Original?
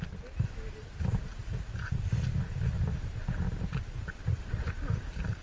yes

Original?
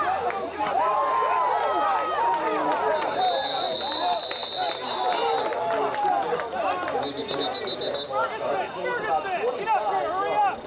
yes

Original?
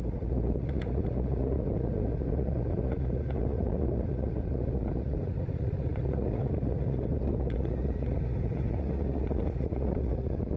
no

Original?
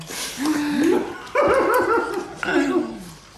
yes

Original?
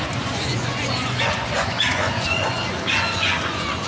no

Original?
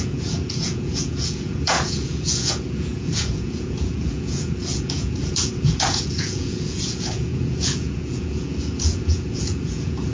no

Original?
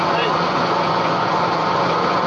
no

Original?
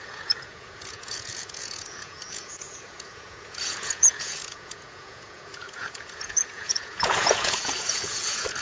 no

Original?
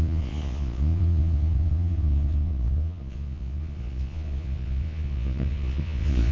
no